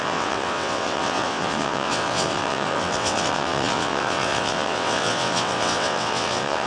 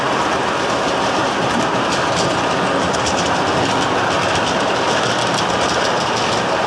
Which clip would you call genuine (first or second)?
second